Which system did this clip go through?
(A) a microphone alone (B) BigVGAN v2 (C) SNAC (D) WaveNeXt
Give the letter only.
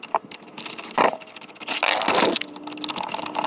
A